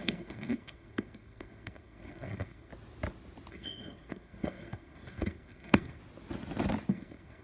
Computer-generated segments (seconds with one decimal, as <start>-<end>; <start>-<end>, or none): 0.0-2.7; 3.5-6.0; 6.9-7.4